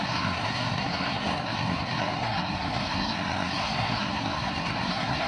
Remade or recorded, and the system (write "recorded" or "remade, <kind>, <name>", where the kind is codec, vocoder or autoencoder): remade, codec, SNAC